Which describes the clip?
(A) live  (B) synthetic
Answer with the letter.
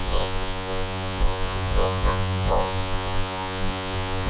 B